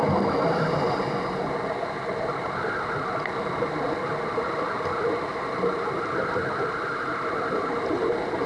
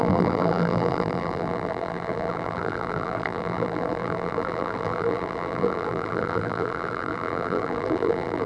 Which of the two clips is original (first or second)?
first